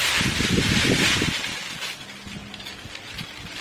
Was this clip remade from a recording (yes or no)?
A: no